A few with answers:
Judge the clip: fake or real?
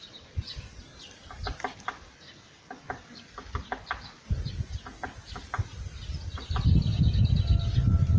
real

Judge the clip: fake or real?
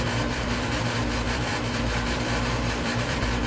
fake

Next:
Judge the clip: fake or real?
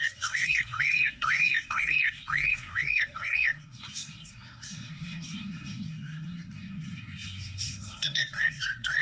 fake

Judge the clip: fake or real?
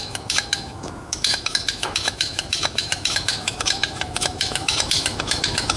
fake